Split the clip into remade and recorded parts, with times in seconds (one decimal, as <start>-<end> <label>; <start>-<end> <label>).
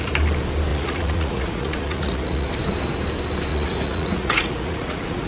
0.0-0.7 recorded; 0.7-2.5 remade; 2.5-3.5 recorded; 3.5-5.3 remade